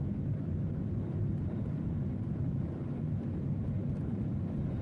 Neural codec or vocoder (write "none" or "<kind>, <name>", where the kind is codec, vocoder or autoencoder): none